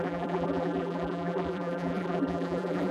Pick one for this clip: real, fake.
fake